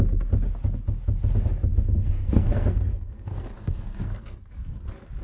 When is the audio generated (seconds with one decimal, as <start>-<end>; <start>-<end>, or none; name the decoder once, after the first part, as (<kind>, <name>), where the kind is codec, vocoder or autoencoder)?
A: 1.7-4.8 (codec, SNAC)